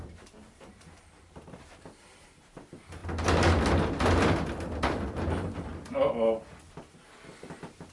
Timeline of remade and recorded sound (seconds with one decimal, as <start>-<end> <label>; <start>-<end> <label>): 0.0-3.0 remade; 3.0-4.8 recorded; 4.8-5.7 remade; 5.7-6.4 recorded; 6.4-7.9 remade